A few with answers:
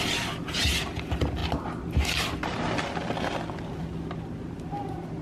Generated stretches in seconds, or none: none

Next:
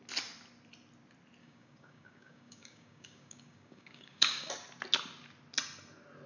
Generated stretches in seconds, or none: 1.4-4.5

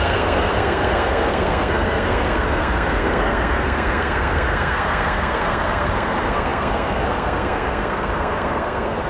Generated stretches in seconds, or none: 0.0-9.1

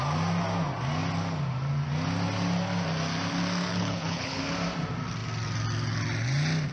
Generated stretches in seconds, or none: 3.7-4.4

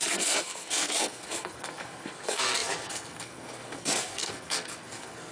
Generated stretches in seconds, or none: 0.0-5.3

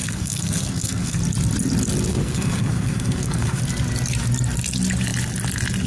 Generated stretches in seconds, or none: 0.0-1.2; 2.1-3.6

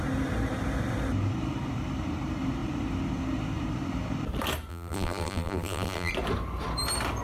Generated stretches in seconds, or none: 4.7-6.1

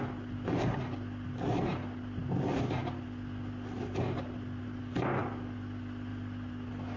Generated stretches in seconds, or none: none